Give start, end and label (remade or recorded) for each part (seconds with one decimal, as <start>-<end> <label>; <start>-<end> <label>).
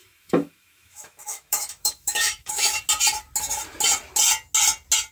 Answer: 0.0-2.8 remade; 2.8-5.1 recorded